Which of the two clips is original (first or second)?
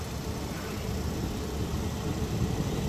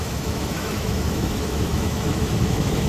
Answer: first